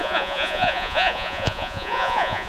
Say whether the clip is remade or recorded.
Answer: remade